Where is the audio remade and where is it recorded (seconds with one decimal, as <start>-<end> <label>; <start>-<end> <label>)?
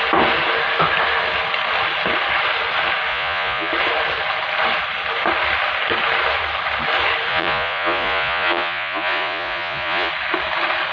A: 0.0-3.1 recorded; 3.1-3.7 remade; 3.7-7.3 recorded; 7.3-10.1 remade; 10.1-10.9 recorded